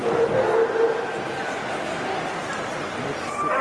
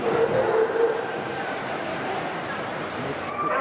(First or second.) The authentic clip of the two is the first